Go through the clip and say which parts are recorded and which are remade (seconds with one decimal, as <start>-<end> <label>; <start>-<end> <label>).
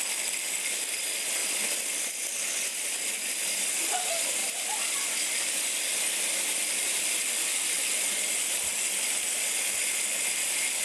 0.0-10.8 recorded